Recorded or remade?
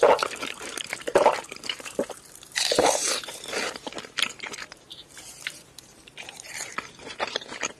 remade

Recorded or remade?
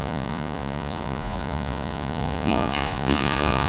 remade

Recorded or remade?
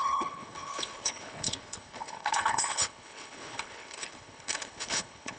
remade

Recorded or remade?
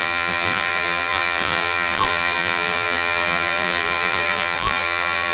remade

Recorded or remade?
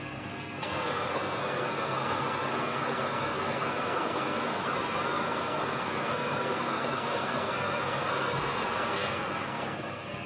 remade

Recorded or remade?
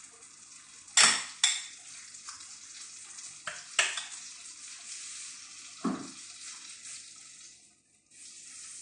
recorded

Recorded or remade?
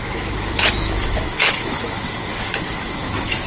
remade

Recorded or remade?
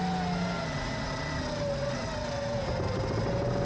recorded